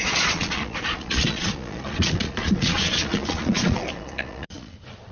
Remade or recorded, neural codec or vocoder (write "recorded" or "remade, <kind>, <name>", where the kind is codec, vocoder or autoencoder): remade, vocoder, Vocos